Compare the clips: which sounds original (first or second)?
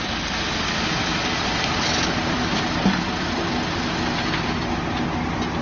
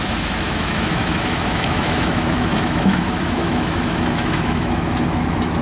first